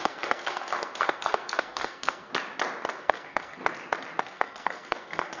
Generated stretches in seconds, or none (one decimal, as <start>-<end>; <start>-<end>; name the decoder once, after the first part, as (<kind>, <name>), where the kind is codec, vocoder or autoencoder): 0.0-2.3 (codec, SNAC); 2.9-3.6; 4.2-5.4